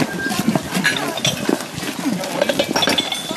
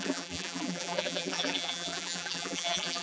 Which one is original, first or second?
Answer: first